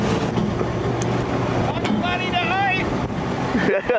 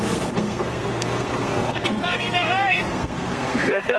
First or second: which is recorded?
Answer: first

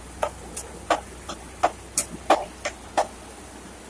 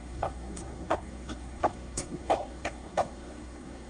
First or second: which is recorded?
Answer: first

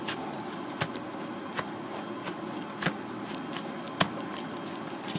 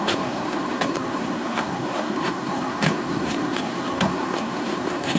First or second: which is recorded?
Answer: first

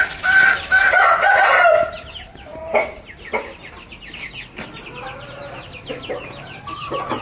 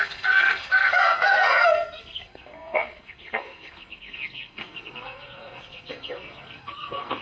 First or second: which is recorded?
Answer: first